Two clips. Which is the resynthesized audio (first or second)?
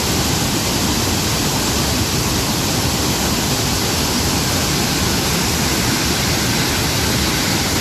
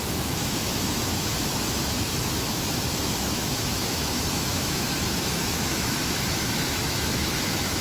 second